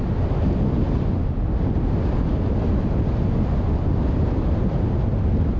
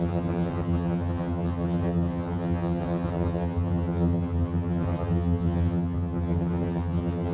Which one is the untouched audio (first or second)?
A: first